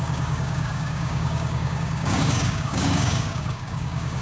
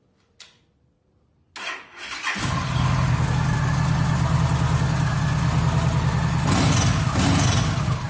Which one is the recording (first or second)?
second